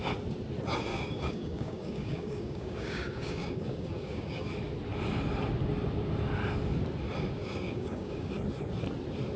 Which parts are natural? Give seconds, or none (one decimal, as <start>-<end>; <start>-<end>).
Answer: 0.0-0.9; 4.5-7.4; 8.3-9.4

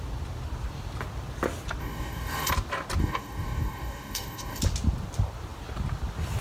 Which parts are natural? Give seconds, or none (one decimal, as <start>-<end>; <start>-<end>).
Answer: 0.0-1.8; 2.5-3.0; 4.6-6.4

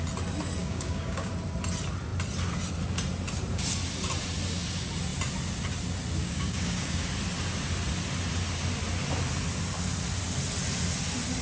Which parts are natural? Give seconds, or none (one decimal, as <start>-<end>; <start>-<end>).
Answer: 0.0-0.6; 1.3-6.2; 7.1-11.4